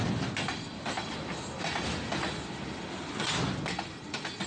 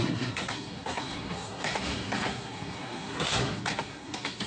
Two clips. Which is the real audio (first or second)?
first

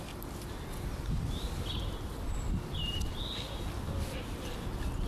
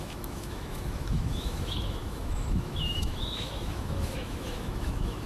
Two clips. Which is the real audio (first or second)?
first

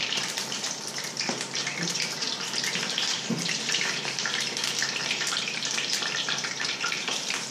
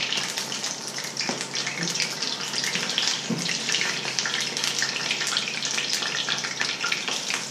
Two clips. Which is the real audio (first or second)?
second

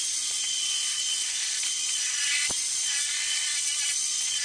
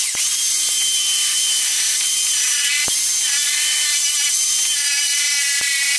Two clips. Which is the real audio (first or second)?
second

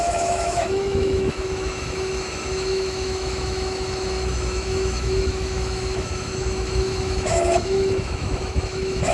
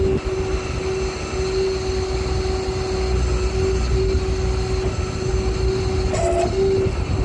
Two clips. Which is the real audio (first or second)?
second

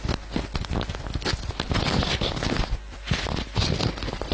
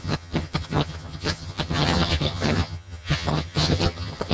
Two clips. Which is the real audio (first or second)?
first